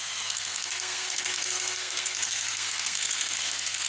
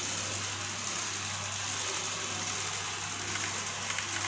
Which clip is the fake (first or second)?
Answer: first